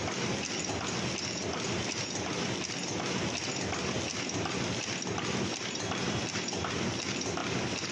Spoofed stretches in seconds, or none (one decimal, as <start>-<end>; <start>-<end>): none

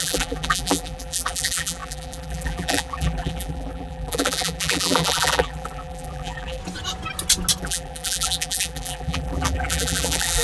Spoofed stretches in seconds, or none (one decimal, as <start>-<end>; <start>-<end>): 0.0-6.6; 7.6-10.4

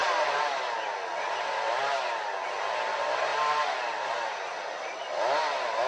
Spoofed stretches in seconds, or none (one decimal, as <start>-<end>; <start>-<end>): 0.0-1.8; 3.3-4.1

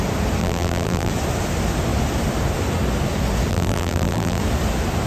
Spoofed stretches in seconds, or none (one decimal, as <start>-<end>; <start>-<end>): 0.4-1.1; 3.5-4.4

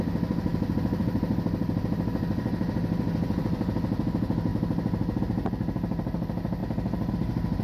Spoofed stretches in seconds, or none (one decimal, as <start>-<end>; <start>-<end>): none